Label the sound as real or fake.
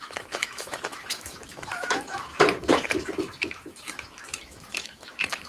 fake